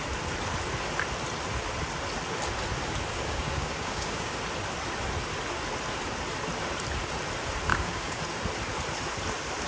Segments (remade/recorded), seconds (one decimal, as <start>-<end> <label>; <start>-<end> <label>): 0.0-3.1 recorded; 3.1-4.4 remade; 4.4-7.7 recorded; 7.7-8.2 remade; 8.2-9.7 recorded